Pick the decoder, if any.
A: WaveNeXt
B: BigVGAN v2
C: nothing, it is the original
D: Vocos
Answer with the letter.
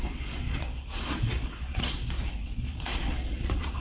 D